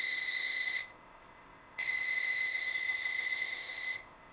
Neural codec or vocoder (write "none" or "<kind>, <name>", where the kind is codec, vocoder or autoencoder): codec, ZipCodec